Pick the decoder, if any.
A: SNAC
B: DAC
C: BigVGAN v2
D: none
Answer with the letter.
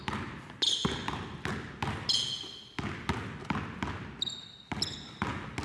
D